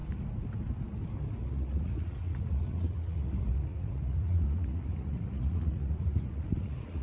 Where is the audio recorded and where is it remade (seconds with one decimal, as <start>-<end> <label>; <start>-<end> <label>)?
0.0-1.4 recorded; 1.4-7.0 remade